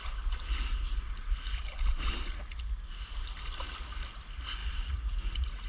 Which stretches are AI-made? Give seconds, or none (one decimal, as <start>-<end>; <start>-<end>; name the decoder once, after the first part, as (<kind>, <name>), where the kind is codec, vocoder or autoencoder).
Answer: 4.6-5.7 (vocoder, Vocos)